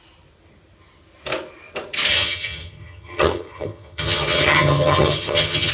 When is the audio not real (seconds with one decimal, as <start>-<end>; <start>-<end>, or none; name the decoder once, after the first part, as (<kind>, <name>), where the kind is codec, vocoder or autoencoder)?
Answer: 2.1-5.7 (vocoder, HiFi-GAN)